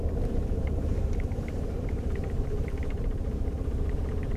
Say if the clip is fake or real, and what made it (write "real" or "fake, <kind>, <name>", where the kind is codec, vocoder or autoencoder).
fake, vocoder, BigVGAN v2